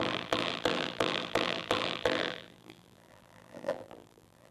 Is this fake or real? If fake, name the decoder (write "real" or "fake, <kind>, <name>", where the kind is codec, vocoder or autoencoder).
fake, vocoder, BigVGAN v2